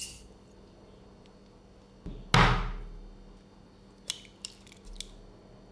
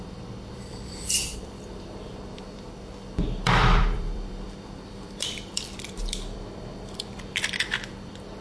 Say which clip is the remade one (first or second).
second